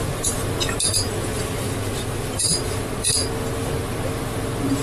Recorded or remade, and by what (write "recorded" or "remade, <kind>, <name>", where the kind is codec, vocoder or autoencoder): remade, vocoder, BigVGAN v2